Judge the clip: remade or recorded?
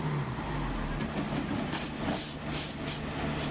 recorded